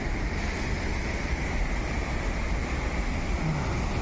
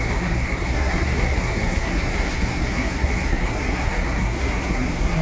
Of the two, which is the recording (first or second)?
first